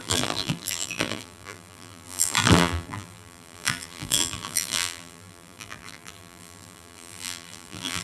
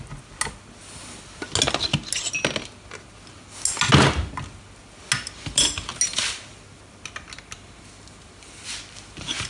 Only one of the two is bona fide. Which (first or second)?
second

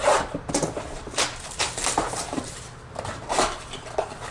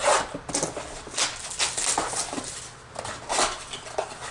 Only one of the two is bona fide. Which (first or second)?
second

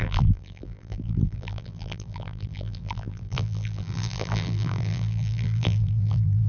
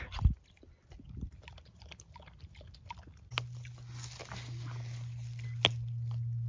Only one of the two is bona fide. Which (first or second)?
second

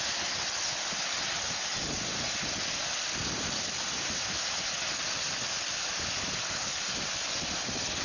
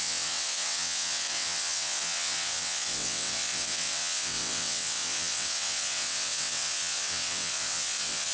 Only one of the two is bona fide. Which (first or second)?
first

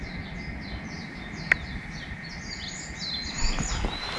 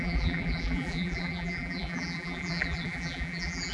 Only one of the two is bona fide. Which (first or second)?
first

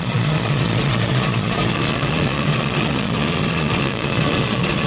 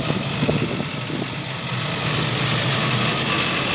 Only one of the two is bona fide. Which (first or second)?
second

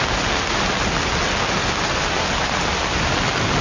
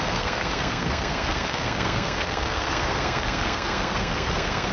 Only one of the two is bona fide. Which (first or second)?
first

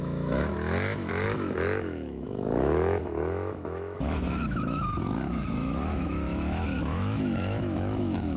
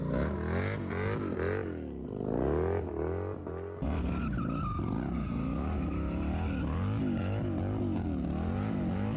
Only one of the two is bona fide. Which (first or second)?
second